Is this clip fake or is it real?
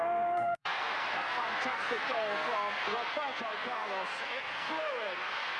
fake